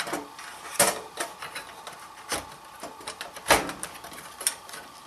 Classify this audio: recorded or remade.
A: recorded